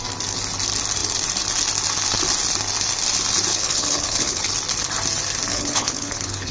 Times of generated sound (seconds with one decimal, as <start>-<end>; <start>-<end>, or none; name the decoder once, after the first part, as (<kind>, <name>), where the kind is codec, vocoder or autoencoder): 3.5-4.5 (codec, HILCodec); 5.5-6.5